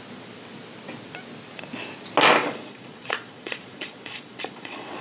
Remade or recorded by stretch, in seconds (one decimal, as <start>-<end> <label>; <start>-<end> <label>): 0.0-2.4 recorded; 2.4-5.0 remade